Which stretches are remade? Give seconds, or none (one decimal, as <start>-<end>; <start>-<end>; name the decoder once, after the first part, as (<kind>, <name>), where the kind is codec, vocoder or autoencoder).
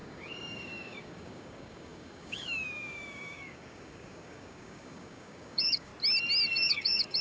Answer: 0.0-5.9 (codec, DAC); 6.5-7.2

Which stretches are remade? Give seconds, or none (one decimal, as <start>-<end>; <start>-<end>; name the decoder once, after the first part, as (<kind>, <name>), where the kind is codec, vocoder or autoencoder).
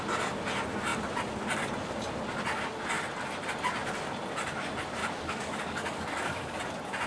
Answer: 5.0-6.6 (codec, DAC)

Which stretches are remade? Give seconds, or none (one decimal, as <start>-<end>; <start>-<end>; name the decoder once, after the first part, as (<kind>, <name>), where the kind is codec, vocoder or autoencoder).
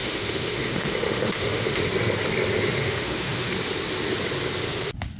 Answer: 0.0-1.8 (autoencoder, DAC-VAE); 2.8-3.5